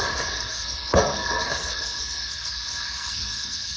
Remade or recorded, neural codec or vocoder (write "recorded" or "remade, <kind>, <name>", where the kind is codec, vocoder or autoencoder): remade, codec, SNAC